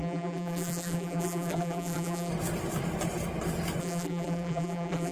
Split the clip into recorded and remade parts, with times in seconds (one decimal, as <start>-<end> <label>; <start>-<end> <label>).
0.0-2.3 remade; 2.3-3.8 recorded; 3.8-5.1 remade